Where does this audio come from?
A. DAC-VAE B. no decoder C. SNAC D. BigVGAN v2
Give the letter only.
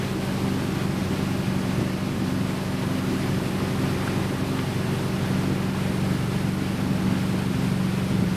B